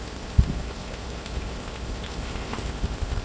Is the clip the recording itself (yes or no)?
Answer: no